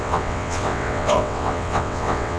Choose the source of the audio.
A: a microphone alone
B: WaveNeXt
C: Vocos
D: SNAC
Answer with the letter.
B